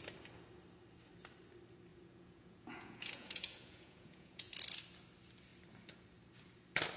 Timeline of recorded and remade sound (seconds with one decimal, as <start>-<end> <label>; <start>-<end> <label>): 0.0-1.9 recorded; 1.9-4.5 remade; 4.5-7.0 recorded